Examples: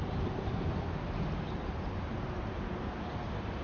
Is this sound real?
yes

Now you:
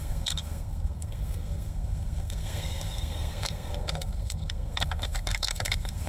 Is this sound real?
no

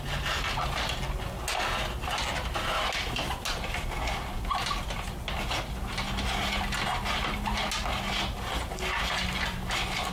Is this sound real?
yes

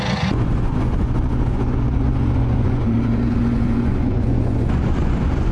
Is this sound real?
no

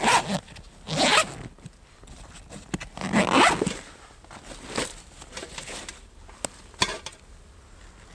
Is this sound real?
yes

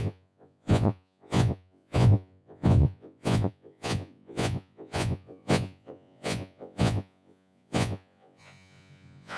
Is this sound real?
no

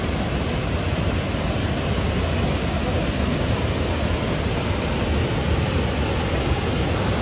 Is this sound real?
yes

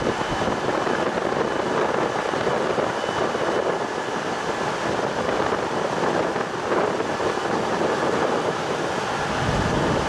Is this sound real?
yes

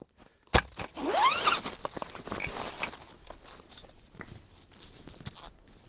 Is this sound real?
yes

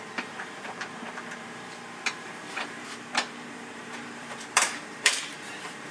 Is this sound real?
no